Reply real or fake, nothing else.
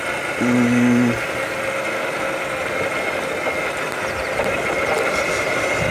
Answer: real